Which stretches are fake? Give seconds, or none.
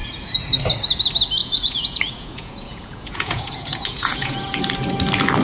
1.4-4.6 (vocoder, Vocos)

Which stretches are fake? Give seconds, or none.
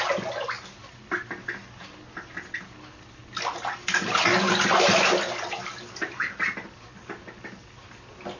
none